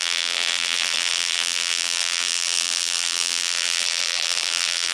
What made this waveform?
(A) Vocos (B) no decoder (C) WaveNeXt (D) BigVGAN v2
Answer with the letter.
D